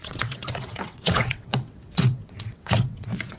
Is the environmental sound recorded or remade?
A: remade